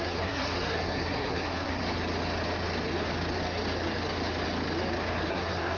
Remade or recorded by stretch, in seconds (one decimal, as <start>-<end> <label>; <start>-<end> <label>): 0.0-1.8 remade; 1.8-5.3 recorded; 5.3-5.8 remade